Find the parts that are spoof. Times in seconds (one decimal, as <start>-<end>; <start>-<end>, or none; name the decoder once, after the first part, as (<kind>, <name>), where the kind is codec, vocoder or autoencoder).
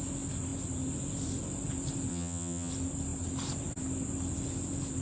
2.1-2.7 (vocoder, HiFi-GAN)